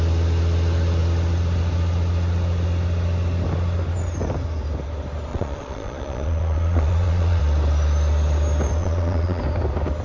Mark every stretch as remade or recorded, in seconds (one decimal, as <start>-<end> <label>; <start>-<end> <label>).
0.0-5.3 recorded; 5.3-7.4 remade; 7.4-8.8 recorded; 8.8-9.4 remade; 9.4-10.0 recorded